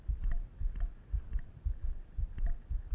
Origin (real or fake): real